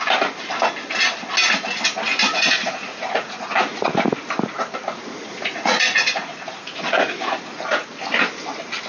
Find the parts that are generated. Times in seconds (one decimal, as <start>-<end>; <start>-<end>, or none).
2.2-3.9; 5.3-7.9